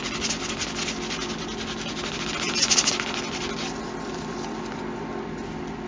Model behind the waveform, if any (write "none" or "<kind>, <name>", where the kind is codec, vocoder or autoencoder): none